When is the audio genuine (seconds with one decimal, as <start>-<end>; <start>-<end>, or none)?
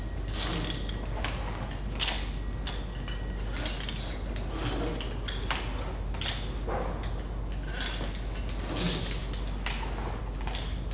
0.0-10.9